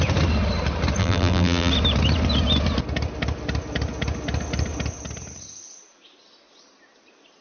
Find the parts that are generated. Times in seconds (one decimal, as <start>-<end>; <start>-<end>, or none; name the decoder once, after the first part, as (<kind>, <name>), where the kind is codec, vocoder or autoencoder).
1.0-1.7 (vocoder, BigVGAN v2)

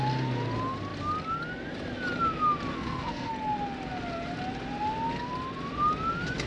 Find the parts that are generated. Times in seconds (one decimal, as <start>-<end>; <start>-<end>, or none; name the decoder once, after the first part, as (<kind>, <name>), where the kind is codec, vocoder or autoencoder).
2.7-3.3 (codec, SNAC)

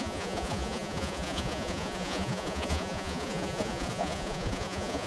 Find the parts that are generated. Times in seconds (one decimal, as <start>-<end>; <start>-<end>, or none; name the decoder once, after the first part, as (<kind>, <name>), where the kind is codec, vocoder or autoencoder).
0.0-5.1 (vocoder, Vocos)

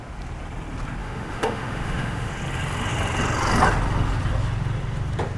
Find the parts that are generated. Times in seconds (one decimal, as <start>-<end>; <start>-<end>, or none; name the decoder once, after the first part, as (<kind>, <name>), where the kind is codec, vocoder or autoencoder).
1.0-2.3 (autoencoder, DAC-VAE)

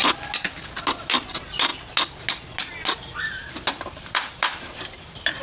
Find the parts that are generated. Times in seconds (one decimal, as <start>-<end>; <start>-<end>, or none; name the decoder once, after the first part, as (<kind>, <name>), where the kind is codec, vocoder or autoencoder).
1.0-1.7 (vocoder, BigVGAN v2); 3.7-5.4

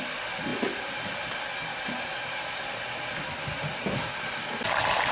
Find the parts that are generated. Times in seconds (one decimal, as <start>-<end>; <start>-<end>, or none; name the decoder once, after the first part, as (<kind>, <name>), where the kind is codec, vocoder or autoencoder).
none

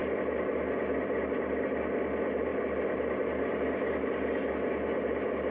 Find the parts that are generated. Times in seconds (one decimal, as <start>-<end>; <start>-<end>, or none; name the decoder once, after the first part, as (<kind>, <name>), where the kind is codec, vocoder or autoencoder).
none